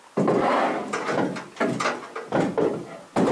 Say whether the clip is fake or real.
real